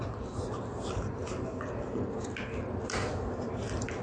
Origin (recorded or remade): recorded